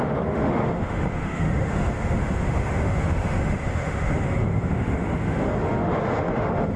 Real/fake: fake